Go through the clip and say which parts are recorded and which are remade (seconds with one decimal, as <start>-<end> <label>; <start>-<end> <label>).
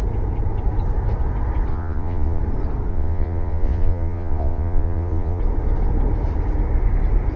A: 0.0-1.7 recorded; 1.7-2.4 remade; 2.4-2.9 recorded; 2.9-5.4 remade; 5.4-7.4 recorded